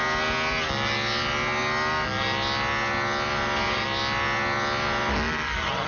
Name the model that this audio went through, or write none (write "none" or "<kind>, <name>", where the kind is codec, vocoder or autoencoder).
none